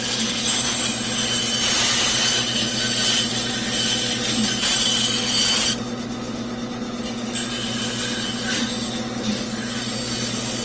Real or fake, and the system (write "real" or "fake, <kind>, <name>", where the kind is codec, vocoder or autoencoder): real